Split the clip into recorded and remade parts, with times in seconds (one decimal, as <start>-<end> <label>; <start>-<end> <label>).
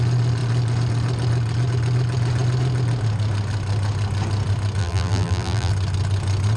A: 0.0-4.8 recorded; 4.8-5.7 remade; 5.7-6.6 recorded